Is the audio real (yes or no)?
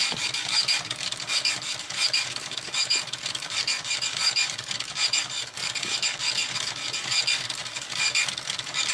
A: no